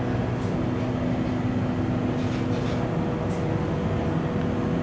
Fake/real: real